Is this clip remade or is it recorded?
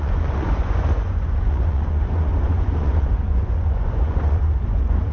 remade